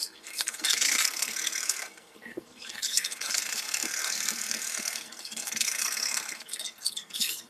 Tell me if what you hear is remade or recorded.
remade